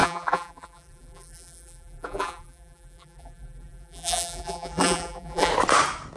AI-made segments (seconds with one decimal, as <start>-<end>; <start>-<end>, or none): 0.0-5.5